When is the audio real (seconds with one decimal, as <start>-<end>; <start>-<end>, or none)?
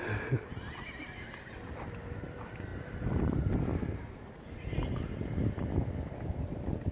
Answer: 0.0-6.9